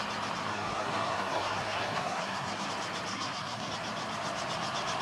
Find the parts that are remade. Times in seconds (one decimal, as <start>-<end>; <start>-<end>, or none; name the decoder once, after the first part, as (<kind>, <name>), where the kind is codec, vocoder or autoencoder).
0.5-2.7 (codec, SNAC); 3.1-3.7